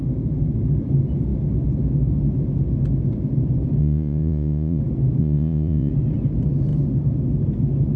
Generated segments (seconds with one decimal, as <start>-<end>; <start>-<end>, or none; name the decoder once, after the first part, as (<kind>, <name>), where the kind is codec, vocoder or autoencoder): 3.8-4.8 (vocoder, Vocos); 5.2-5.9